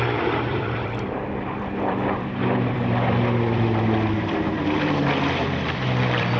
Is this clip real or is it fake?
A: fake